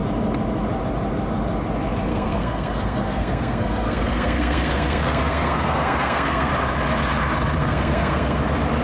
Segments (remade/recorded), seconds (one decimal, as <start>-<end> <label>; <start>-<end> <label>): 0.0-2.1 recorded; 2.1-6.5 remade; 6.5-7.6 recorded; 7.6-8.4 remade; 8.4-8.8 recorded